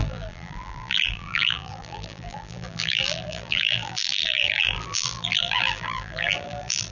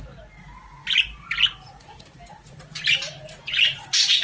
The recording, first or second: second